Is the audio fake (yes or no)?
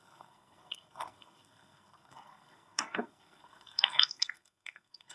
yes